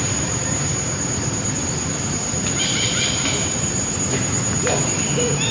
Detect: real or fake real